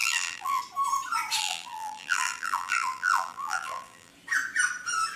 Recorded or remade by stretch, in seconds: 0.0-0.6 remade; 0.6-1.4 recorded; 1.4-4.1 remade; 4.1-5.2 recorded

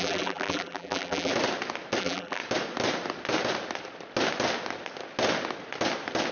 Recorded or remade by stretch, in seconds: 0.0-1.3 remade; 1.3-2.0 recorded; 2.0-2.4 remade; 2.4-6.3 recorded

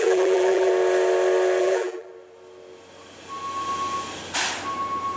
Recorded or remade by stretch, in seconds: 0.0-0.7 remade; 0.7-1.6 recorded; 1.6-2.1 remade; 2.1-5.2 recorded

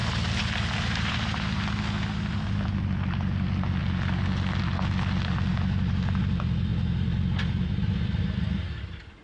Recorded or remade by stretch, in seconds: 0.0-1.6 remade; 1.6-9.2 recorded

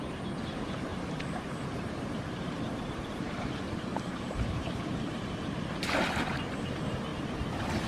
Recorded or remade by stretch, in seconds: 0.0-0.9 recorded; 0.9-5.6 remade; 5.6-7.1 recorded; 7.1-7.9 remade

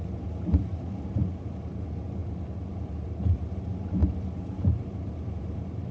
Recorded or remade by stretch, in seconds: 0.0-2.2 remade; 2.2-2.7 recorded; 2.7-4.0 remade; 4.0-4.5 recorded; 4.5-5.9 remade

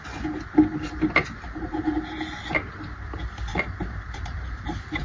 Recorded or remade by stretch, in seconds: 0.0-3.5 recorded; 3.5-5.0 remade

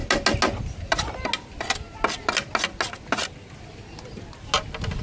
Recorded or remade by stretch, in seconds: 0.0-5.0 recorded